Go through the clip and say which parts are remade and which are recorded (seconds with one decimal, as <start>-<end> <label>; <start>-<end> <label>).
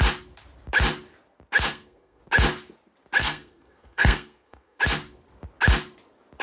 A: 0.0-1.7 recorded; 1.7-2.2 remade; 2.2-3.2 recorded; 3.2-4.8 remade; 4.8-6.4 recorded